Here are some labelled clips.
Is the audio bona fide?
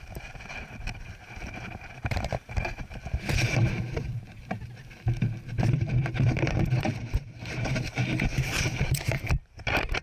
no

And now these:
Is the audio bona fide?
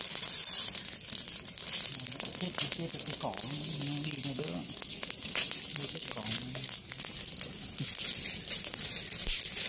yes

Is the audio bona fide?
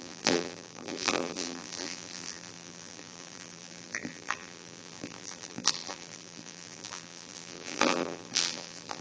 no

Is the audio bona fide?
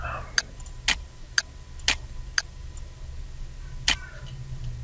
yes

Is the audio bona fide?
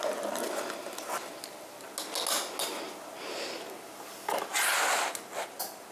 yes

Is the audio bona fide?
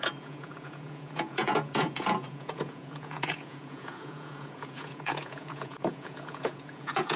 no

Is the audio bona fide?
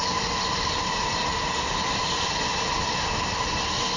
yes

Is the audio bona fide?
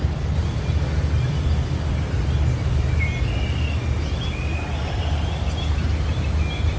yes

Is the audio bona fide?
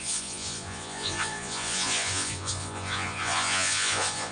no